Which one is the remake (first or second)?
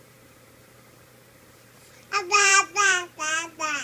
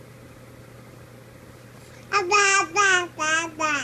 first